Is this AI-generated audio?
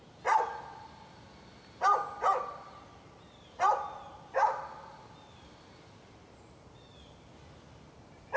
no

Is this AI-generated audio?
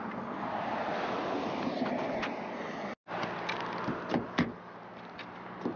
no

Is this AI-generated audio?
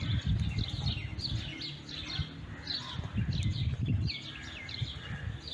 no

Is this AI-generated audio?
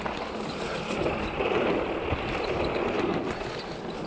no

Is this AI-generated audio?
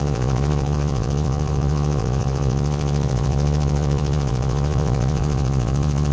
yes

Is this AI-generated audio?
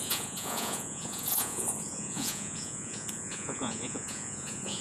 yes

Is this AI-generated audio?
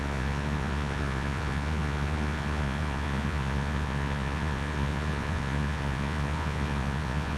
yes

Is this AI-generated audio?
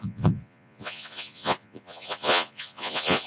yes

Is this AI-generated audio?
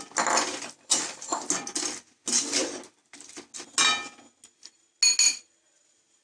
no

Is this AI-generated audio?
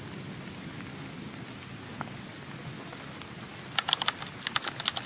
no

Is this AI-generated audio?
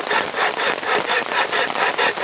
no